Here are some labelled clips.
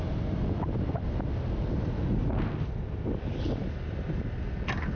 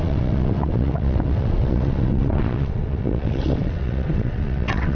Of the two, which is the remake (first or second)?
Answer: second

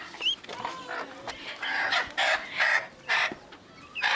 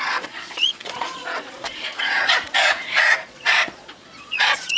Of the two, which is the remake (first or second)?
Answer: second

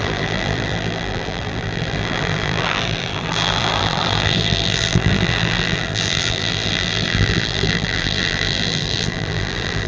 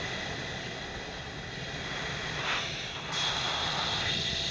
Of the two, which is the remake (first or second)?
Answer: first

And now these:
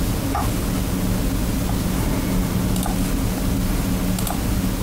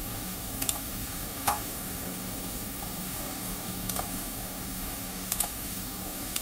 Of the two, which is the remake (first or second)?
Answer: second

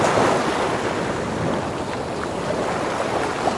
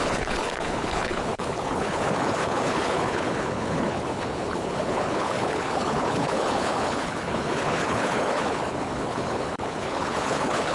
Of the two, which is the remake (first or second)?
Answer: second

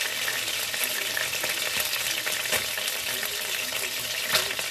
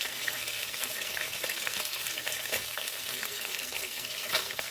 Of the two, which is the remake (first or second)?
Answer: second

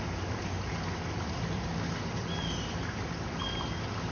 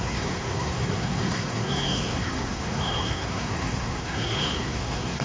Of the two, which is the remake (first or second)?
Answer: second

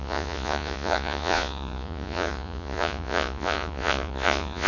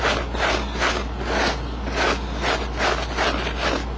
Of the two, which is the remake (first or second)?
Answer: first